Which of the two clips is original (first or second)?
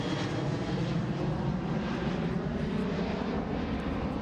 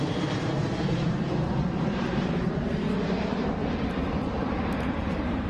first